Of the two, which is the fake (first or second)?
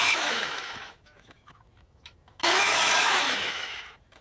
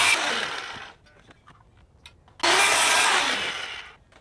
first